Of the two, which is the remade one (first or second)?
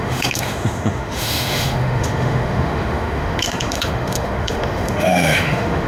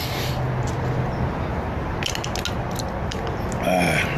first